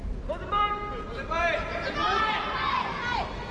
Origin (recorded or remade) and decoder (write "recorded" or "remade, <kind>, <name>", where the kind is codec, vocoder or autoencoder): recorded